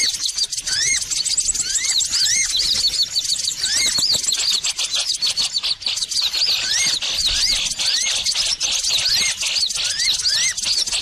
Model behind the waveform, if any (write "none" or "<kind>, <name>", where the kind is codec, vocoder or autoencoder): none